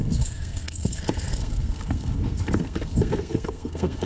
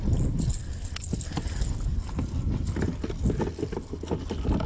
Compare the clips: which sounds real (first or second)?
second